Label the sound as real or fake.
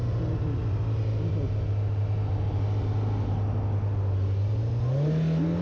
real